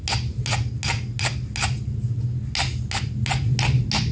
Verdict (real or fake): real